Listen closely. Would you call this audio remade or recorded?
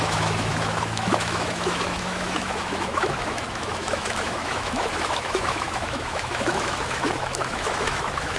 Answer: remade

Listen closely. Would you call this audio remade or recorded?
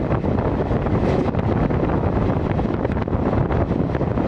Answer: recorded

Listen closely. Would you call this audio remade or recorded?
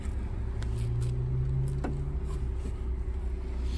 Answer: recorded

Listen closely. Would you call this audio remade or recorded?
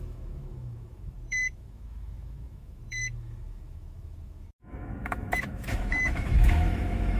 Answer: remade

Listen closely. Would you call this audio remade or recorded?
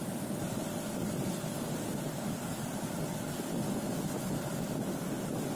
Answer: recorded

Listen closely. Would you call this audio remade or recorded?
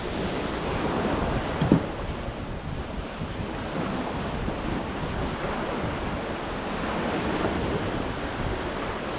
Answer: recorded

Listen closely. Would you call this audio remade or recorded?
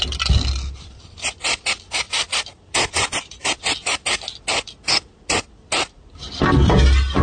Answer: recorded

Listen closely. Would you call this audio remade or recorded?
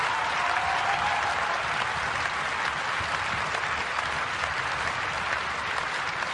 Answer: recorded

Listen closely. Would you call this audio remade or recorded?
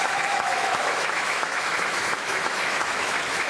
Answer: remade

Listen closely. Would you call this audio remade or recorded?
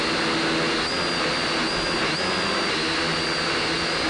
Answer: recorded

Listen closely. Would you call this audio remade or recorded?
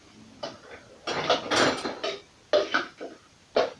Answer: recorded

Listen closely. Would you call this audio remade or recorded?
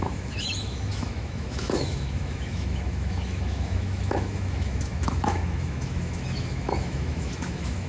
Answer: remade